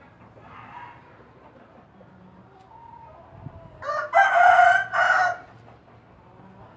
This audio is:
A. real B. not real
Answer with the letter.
A